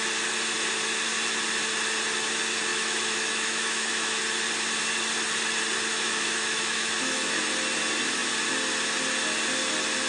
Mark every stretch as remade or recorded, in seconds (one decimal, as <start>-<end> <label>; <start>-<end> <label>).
0.0-2.7 recorded; 2.7-4.2 remade; 4.2-5.9 recorded; 5.9-7.4 remade; 7.4-10.1 recorded